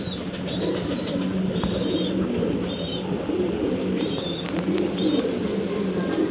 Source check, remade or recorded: recorded